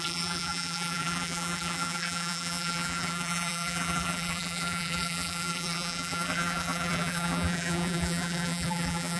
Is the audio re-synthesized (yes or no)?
yes